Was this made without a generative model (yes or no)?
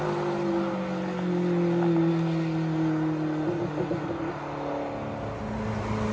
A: yes